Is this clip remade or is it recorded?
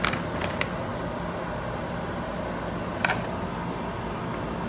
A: recorded